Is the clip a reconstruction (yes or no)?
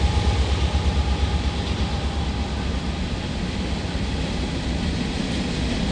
no